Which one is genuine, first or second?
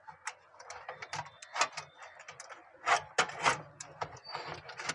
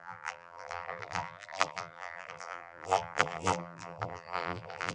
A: first